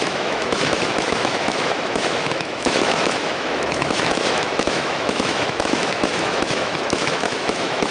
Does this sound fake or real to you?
fake